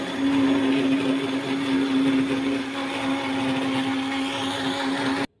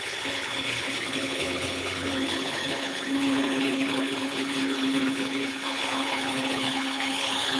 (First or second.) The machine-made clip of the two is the second